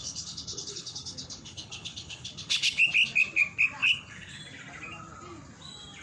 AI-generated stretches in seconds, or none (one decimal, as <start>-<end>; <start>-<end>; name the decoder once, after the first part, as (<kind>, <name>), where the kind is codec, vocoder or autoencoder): 0.0-2.8 (codec, HILCodec); 3.8-4.4